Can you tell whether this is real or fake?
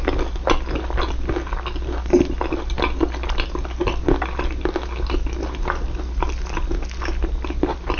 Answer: real